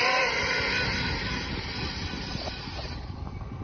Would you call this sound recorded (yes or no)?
yes